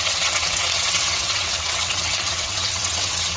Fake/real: fake